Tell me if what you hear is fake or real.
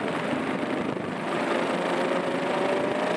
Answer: fake